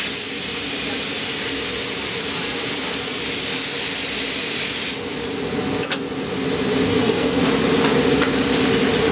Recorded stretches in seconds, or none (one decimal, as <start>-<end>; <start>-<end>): 0.0-6.9; 7.4-9.1